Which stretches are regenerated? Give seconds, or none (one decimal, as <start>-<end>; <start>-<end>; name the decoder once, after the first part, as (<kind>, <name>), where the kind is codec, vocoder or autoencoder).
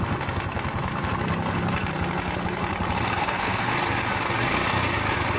3.2-3.7 (codec, SNAC)